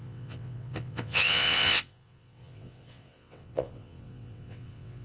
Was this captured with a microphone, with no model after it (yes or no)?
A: no